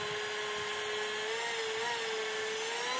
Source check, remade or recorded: recorded